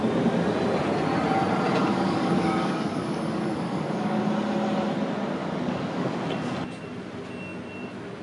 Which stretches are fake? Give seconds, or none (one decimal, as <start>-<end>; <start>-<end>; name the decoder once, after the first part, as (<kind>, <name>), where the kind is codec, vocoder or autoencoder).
1.9-4.2 (codec, DAC); 5.4-6.2